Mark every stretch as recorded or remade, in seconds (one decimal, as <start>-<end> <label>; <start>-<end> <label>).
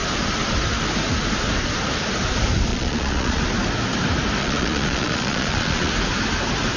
0.0-2.7 recorded; 2.7-3.4 remade; 3.4-4.4 recorded; 4.4-5.9 remade; 5.9-6.8 recorded